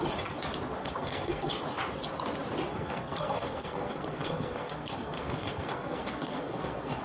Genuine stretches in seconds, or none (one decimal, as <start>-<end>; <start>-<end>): 0.0-0.8; 1.5-2.7